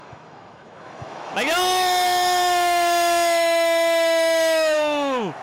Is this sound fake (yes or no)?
yes